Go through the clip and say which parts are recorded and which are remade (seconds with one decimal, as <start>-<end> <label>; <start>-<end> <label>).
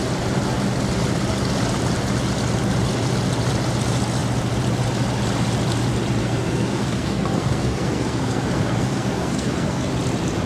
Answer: 0.0-6.2 recorded; 6.2-9.9 remade; 9.9-10.5 recorded